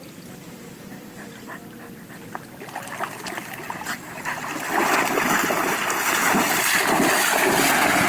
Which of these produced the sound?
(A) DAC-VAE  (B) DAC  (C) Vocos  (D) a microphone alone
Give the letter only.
D